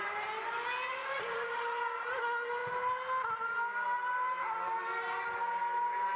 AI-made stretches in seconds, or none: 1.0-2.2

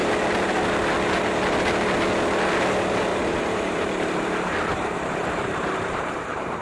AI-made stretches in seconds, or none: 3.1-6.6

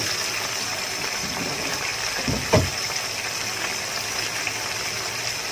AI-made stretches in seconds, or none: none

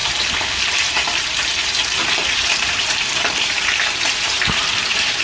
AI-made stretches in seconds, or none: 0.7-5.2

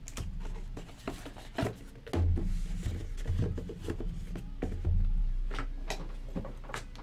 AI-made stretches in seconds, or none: none

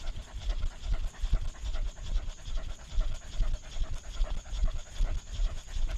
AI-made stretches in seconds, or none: none

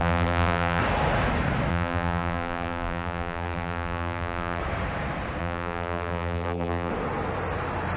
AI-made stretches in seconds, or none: 0.0-0.8; 1.7-4.6; 5.4-6.9